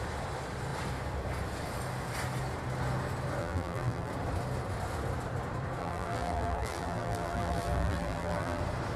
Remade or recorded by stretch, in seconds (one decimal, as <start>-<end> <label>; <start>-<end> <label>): 0.0-3.4 recorded; 3.4-4.1 remade; 4.1-5.8 recorded; 5.8-8.6 remade; 8.6-9.0 recorded

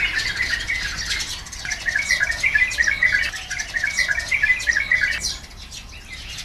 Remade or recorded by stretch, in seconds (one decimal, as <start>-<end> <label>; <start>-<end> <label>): 0.0-6.4 recorded

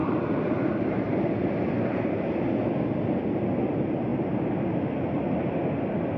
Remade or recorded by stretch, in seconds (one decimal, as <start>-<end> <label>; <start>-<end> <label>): 0.0-2.4 remade; 2.4-6.2 recorded

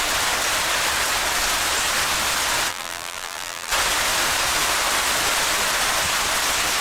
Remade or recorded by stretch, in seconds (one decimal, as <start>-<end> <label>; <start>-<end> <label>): 0.0-2.7 recorded; 2.7-3.7 remade; 3.7-6.8 recorded

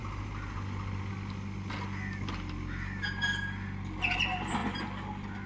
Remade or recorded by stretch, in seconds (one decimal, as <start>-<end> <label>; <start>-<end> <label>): 0.0-5.5 recorded